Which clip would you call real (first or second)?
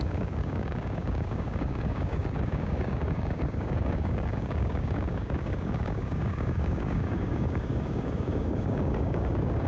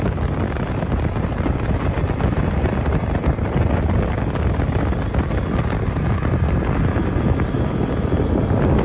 second